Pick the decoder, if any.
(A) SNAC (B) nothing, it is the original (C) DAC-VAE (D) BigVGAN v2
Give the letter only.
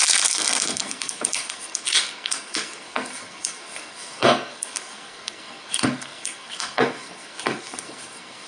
A